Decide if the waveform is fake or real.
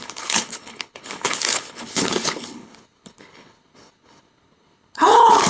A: fake